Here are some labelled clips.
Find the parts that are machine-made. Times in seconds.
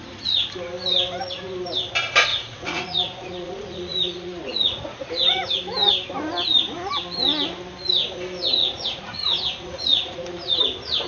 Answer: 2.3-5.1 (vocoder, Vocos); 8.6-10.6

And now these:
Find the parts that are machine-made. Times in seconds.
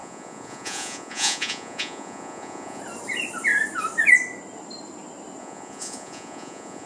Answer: 0.0-2.8 (vocoder, Vocos); 5.4-6.9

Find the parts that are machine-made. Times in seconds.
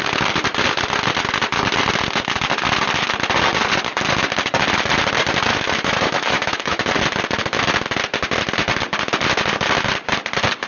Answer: 5.5-6.9 (autoencoder, DAC-VAE)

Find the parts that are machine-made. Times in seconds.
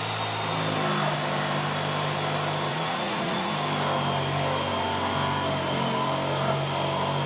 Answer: 2.7-3.5 (vocoder, Vocos)